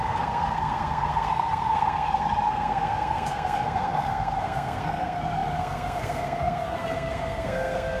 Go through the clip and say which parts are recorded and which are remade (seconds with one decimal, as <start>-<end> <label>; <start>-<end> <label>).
0.0-8.0 remade